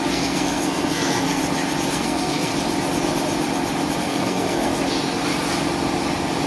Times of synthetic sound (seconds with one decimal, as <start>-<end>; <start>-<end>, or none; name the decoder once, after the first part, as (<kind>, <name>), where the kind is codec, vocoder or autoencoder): 0.0-1.4 (codec, SNAC); 1.9-2.5; 4.0-4.7